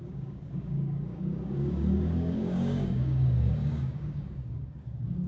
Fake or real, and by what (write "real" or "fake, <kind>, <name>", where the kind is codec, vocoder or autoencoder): fake, codec, DAC